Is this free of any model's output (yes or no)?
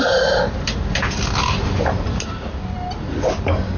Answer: yes